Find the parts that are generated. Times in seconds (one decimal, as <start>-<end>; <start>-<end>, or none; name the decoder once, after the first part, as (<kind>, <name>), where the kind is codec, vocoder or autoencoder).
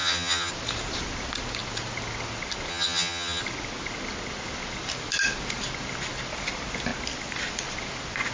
0.0-0.5 (vocoder, HiFi-GAN); 2.7-3.4